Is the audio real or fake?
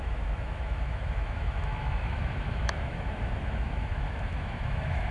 fake